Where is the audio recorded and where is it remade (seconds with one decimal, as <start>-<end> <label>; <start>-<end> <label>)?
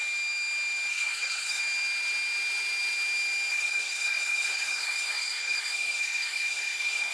0.0-0.9 recorded; 0.9-1.6 remade; 1.6-3.5 recorded; 3.5-7.1 remade